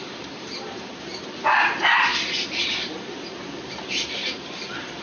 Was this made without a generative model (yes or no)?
no